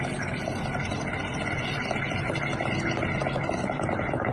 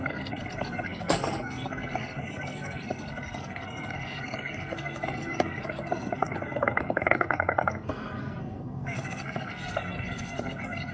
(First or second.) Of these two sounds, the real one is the first